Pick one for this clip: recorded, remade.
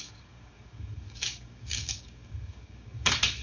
remade